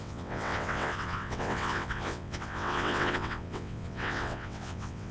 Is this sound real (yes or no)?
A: no